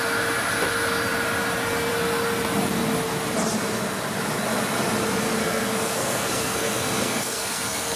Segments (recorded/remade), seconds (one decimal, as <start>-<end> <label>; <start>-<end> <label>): 0.0-5.4 recorded; 5.4-8.0 remade